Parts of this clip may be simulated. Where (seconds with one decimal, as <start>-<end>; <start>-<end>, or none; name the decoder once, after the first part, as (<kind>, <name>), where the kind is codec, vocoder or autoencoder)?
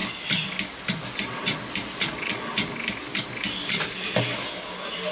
2.0-2.5 (vocoder, Vocos)